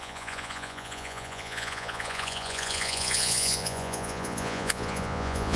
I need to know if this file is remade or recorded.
remade